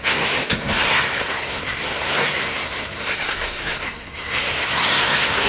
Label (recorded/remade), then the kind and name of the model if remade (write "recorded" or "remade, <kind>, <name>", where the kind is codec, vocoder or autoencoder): remade, codec, SNAC